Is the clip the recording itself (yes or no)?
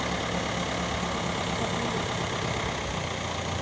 yes